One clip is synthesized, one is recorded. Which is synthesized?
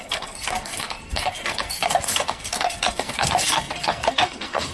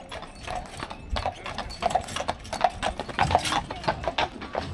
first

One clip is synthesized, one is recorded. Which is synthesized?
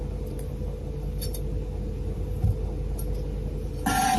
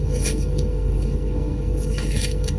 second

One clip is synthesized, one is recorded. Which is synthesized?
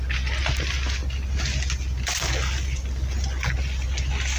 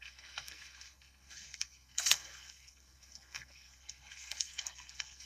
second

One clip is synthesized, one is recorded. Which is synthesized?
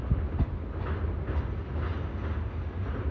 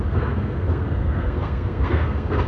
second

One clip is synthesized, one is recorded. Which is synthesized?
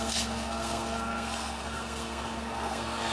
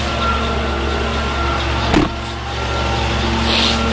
first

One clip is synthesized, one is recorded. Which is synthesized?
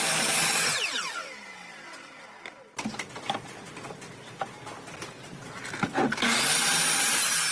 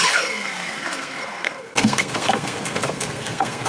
second